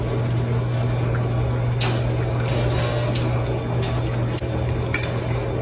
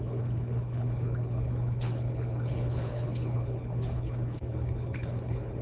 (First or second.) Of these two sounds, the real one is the first